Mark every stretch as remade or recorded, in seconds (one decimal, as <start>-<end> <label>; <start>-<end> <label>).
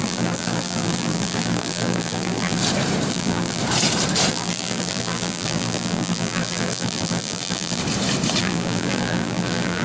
0.0-2.6 remade; 2.6-3.1 recorded; 3.1-3.6 remade; 3.6-4.3 recorded; 4.3-7.8 remade; 7.8-8.4 recorded; 8.4-9.8 remade